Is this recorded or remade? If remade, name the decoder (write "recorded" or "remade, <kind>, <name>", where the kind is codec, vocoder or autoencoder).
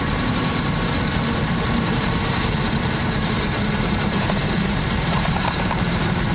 remade, vocoder, BigVGAN v2